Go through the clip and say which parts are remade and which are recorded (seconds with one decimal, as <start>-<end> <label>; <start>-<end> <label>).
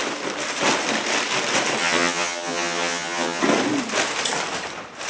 0.0-1.8 recorded; 1.8-3.4 remade; 3.4-5.1 recorded